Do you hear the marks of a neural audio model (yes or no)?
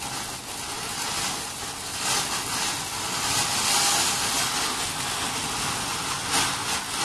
no